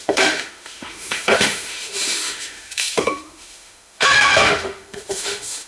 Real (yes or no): no